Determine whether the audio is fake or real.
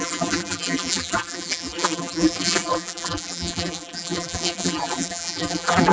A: fake